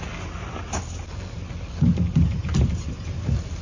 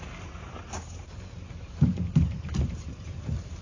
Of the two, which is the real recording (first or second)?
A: first